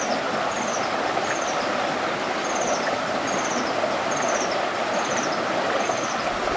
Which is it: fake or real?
real